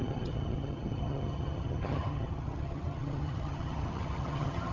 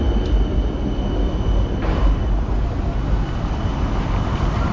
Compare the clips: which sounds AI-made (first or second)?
first